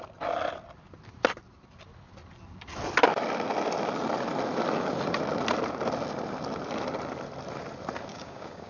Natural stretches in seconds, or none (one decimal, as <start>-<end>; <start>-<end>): 0.0-8.1